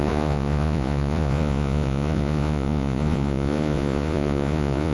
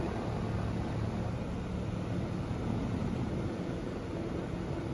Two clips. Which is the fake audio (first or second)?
first